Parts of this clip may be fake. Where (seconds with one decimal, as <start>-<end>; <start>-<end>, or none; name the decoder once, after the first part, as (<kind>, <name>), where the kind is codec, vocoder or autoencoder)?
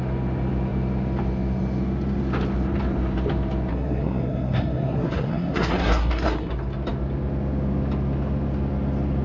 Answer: 3.7-6.5 (codec, SNAC)